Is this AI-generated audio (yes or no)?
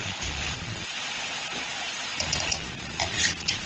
yes